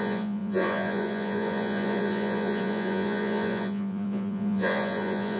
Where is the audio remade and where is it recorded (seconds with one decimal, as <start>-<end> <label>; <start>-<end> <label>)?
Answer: 0.0-5.4 remade